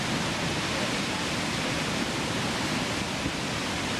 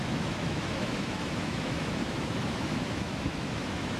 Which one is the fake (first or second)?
second